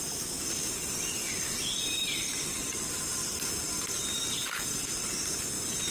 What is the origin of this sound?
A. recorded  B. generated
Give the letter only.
A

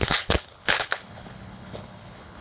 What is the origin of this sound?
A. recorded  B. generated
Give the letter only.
B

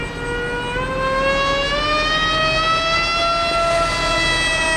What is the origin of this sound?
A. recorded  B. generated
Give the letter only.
A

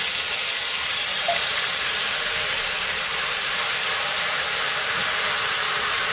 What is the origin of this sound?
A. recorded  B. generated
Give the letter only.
B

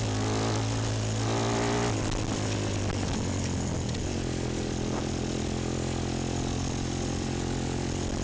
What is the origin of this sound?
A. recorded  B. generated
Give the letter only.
A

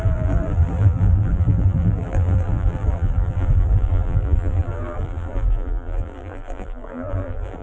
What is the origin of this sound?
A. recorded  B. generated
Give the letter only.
B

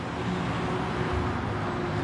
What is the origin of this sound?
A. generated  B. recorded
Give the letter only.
B